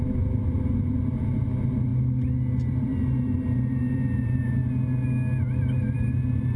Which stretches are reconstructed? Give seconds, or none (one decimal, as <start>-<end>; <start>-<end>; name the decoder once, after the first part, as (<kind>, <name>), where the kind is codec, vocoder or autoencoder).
0.0-1.9 (vocoder, BigVGAN v2); 2.7-4.6; 5.6-6.6